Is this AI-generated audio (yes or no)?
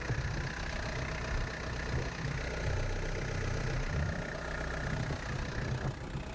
no